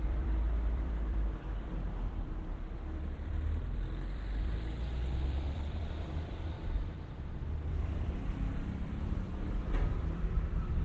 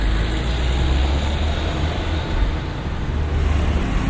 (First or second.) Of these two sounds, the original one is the second